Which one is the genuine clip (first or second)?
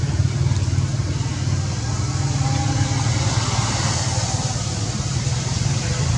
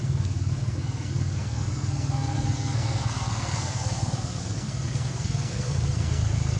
first